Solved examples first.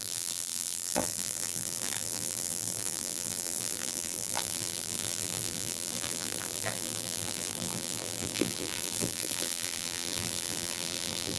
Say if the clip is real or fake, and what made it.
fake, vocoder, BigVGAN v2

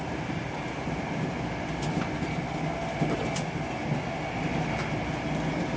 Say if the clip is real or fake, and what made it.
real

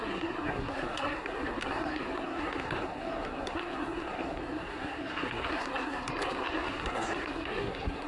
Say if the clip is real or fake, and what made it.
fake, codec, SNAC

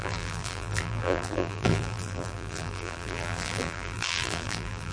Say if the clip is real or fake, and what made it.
fake, vocoder, BigVGAN v2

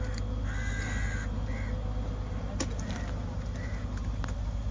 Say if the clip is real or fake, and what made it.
real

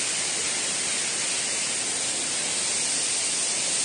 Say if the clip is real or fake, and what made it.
real